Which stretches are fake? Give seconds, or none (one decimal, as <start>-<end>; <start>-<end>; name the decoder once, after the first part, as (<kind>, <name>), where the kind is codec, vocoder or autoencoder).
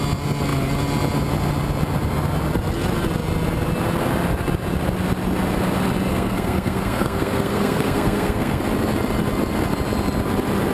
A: 6.1-8.6 (codec, SNAC)